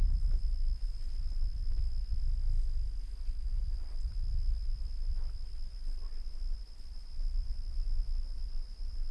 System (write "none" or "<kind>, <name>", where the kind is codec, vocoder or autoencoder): none